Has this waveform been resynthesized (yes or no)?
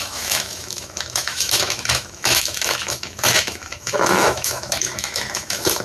yes